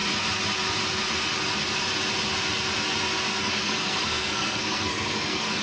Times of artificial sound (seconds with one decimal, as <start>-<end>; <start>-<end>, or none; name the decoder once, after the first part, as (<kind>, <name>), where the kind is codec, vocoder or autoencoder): 3.4-5.6 (codec, SNAC)